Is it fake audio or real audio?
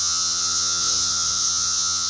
fake